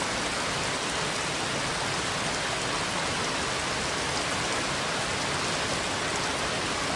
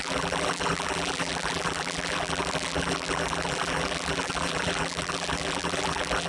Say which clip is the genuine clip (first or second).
first